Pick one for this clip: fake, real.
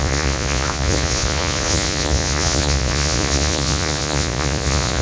fake